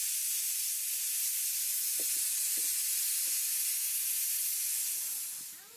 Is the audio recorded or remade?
recorded